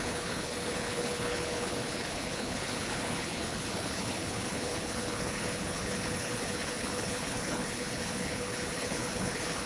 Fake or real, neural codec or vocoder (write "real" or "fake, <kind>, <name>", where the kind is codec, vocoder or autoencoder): fake, codec, HILCodec